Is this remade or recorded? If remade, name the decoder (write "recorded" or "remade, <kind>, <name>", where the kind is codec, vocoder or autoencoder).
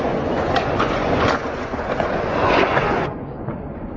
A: remade, vocoder, Vocos